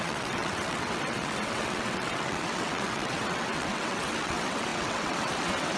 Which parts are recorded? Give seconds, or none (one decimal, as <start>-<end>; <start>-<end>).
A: none